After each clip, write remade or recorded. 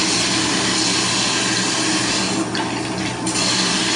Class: recorded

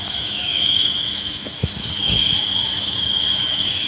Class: remade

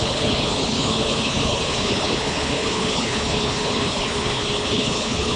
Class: remade